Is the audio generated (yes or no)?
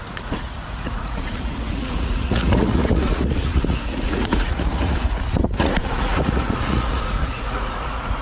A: yes